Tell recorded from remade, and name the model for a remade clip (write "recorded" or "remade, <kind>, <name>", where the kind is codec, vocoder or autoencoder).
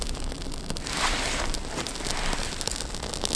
recorded